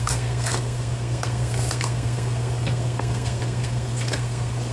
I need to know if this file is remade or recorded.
remade